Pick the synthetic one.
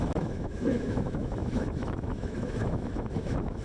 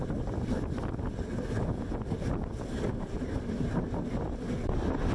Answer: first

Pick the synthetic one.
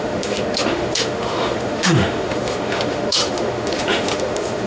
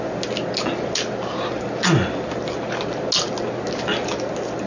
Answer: first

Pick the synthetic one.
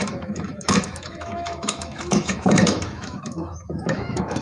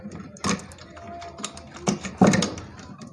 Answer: first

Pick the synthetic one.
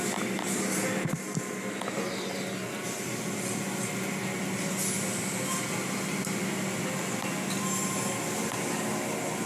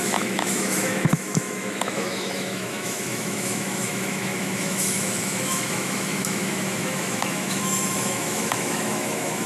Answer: second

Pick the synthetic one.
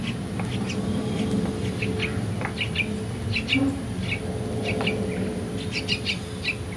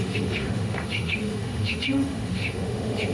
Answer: second